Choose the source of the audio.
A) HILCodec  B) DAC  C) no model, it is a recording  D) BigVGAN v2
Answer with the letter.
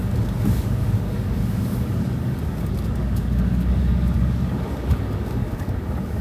B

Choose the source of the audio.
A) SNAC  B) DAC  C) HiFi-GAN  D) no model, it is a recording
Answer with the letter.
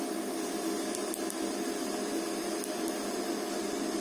D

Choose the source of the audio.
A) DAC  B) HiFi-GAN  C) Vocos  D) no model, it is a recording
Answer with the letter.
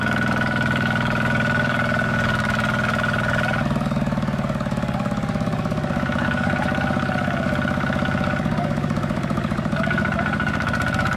A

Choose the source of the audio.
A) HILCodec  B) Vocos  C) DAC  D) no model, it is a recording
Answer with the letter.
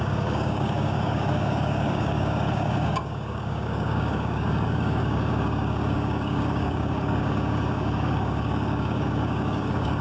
C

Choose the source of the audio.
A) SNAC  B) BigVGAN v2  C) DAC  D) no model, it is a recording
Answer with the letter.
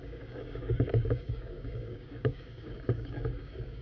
C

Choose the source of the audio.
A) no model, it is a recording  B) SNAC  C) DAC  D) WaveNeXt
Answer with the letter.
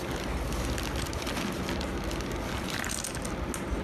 A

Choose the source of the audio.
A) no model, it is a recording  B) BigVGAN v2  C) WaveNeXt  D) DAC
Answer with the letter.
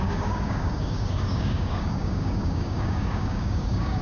D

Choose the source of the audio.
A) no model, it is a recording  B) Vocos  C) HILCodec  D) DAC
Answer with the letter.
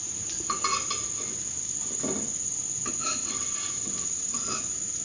A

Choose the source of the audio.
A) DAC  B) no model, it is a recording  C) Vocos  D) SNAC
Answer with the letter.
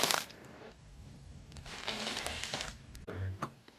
A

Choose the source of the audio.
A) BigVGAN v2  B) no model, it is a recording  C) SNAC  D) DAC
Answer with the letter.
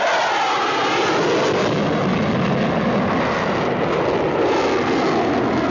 B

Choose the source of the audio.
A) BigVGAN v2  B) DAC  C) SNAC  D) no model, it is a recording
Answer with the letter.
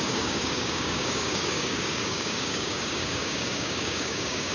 B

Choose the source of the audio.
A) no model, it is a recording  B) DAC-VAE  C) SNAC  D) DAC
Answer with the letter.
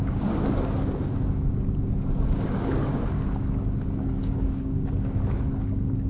D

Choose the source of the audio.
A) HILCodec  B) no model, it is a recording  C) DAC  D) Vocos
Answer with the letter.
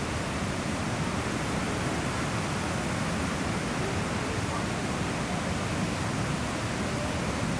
B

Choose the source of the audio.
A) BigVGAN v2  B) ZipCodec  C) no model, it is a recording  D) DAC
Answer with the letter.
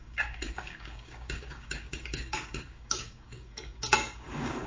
D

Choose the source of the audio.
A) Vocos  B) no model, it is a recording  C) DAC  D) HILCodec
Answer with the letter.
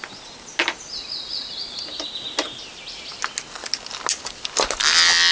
B